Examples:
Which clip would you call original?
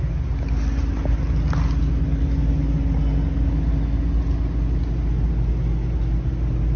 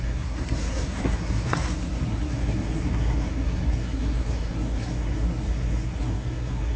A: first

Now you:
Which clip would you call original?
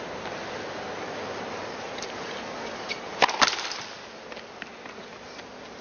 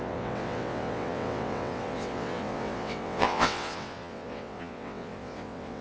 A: first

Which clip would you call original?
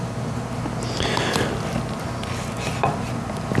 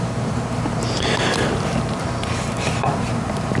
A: first